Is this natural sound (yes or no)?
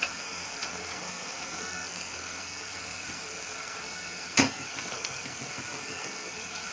no